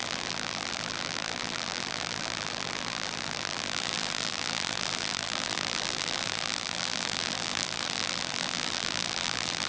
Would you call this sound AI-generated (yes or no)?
yes